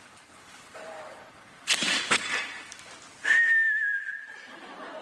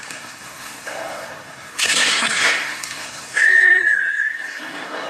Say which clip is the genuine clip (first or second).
first